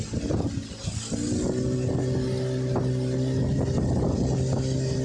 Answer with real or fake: real